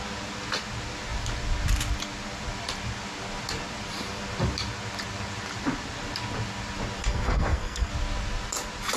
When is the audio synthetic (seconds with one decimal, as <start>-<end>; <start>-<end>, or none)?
7.0-7.9